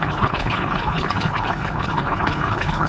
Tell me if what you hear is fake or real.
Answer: fake